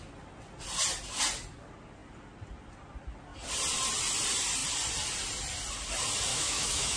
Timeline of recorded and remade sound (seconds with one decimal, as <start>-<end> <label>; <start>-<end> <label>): 0.0-6.3 recorded; 6.3-7.0 remade